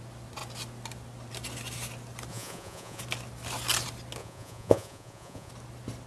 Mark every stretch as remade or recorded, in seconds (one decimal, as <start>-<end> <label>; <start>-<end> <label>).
0.0-2.3 recorded; 2.3-3.0 remade; 3.0-4.2 recorded; 4.2-5.5 remade; 5.5-6.1 recorded